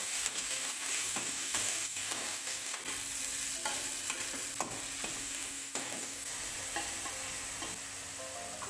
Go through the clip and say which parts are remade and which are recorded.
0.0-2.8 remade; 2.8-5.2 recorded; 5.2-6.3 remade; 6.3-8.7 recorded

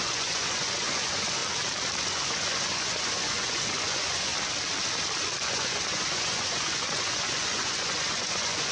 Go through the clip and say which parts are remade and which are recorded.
0.0-1.4 remade; 1.4-2.0 recorded; 2.0-4.3 remade; 4.3-5.4 recorded; 5.4-8.7 remade

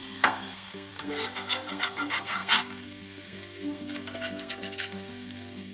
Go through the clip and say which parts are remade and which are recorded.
0.0-5.7 remade

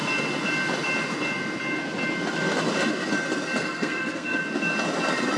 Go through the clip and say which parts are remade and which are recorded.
0.0-3.6 recorded; 3.6-4.4 remade; 4.4-5.4 recorded

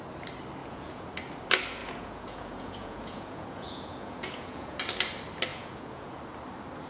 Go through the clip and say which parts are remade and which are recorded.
0.0-0.6 recorded; 0.6-1.1 remade; 1.1-1.8 recorded; 1.8-4.8 remade; 4.8-5.5 recorded; 5.5-6.2 remade; 6.2-6.9 recorded

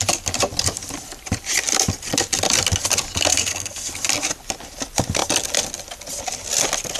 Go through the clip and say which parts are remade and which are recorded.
0.0-3.3 recorded; 3.3-3.9 remade; 3.9-7.0 recorded

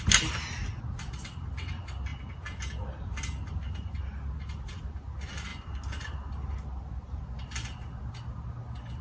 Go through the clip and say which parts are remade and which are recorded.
0.0-9.0 recorded

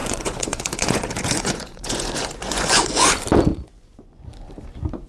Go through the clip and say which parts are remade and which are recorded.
0.0-3.1 remade; 3.1-3.5 recorded; 3.5-4.3 remade; 4.3-5.1 recorded